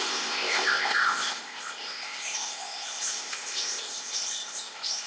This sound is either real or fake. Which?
fake